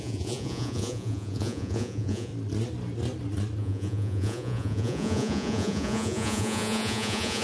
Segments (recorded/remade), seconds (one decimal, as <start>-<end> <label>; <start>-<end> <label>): 0.0-2.3 remade; 2.3-3.6 recorded; 3.6-7.4 remade